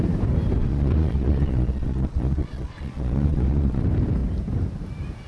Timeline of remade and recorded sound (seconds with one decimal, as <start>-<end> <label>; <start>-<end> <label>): 0.0-0.6 recorded; 0.6-3.8 remade; 3.8-5.3 recorded